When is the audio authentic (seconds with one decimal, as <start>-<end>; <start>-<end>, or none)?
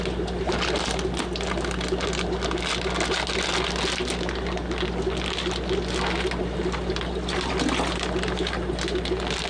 0.0-9.5